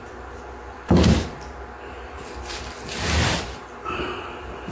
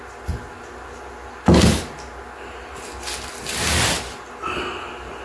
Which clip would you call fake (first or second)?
first